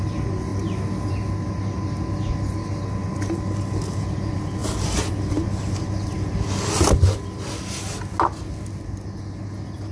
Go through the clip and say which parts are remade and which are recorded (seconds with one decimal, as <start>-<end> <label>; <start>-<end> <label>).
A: 0.0-9.9 recorded